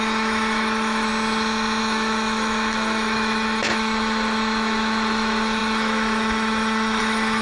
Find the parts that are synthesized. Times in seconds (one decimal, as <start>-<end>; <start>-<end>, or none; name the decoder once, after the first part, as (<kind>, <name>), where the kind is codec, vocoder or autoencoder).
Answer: 0.0-1.1 (autoencoder, DAC-VAE); 1.8-7.4